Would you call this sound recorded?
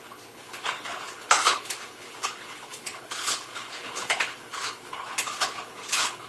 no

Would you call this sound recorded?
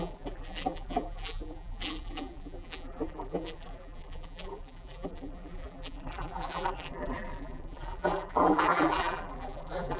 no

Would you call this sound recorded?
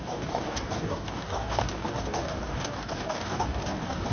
no